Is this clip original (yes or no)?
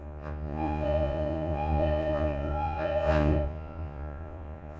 no